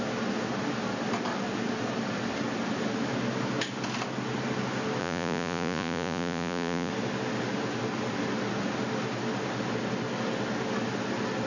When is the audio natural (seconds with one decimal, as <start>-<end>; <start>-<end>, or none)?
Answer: 0.0-5.0; 6.9-11.5